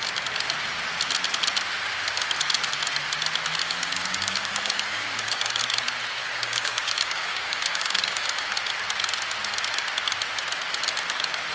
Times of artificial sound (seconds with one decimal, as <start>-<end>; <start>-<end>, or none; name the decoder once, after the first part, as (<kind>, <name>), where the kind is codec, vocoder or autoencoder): 3.6-5.6 (codec, DAC); 6.2-8.5